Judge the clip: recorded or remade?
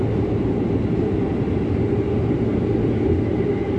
recorded